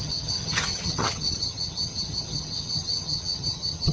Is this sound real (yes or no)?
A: no